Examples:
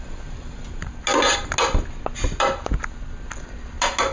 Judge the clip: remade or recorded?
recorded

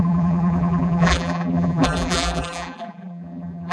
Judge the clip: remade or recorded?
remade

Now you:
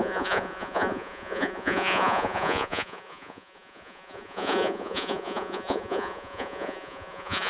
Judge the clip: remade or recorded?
remade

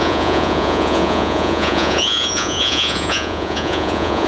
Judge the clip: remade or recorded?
remade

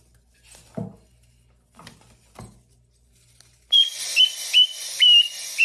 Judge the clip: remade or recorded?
recorded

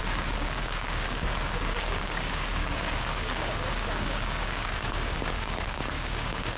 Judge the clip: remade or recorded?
remade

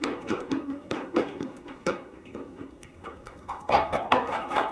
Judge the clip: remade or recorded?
remade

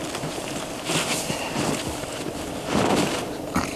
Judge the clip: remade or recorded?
recorded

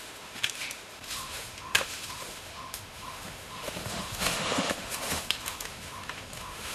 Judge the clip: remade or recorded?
remade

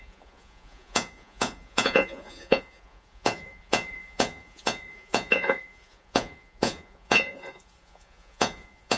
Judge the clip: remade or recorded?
remade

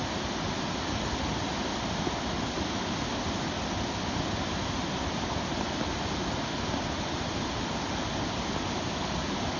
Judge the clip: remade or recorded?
recorded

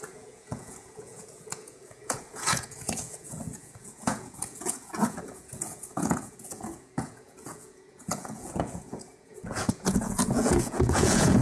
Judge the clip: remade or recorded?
remade